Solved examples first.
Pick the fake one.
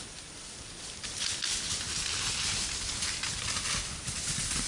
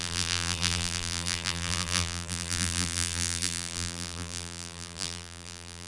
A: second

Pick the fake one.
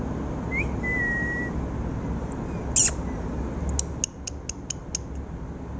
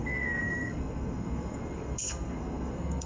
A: second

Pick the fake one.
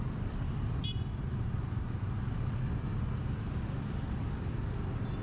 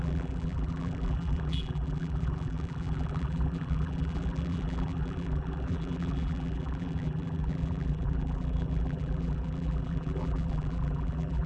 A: second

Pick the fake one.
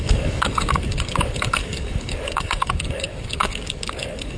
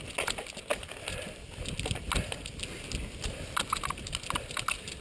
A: first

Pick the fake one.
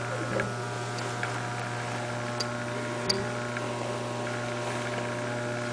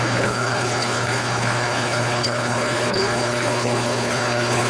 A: second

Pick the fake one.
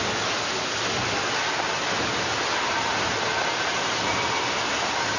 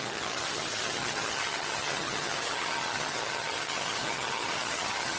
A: second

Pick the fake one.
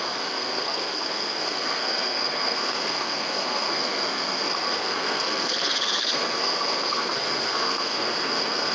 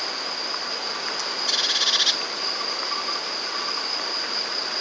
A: first